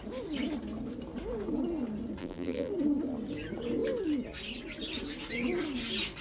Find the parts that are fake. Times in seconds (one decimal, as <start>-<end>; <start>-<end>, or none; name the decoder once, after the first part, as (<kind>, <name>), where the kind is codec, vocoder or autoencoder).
2.2-2.7 (vocoder, BigVGAN v2)